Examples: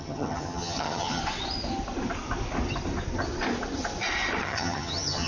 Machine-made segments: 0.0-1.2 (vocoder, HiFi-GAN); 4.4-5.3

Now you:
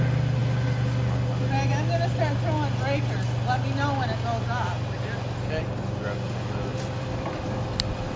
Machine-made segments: 6.7-7.3 (vocoder, BigVGAN v2)

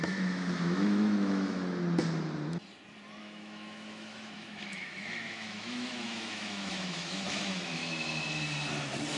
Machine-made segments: 0.0-1.6 (autoencoder, DAC-VAE); 3.2-7.8

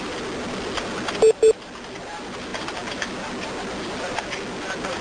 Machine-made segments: none

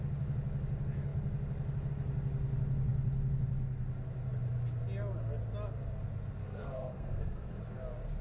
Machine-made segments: 6.4-7.6 (codec, SNAC)